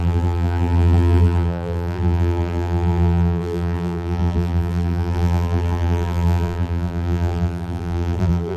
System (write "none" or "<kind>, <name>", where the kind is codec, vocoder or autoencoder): vocoder, BigVGAN v2